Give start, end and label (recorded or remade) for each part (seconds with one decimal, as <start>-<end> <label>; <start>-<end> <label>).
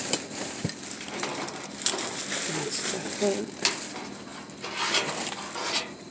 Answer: 0.0-6.1 recorded